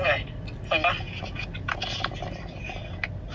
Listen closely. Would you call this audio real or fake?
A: real